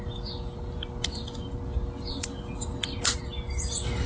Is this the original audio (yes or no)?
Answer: yes